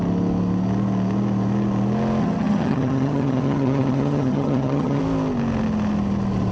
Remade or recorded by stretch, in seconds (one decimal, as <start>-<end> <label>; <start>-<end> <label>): 0.0-2.2 recorded; 2.2-5.0 remade; 5.0-6.5 recorded